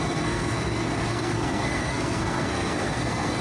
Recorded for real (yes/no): no